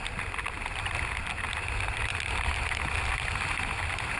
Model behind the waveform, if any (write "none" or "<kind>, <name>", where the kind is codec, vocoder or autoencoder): none